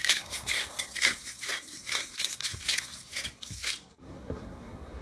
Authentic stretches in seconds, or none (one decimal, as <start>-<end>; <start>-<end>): none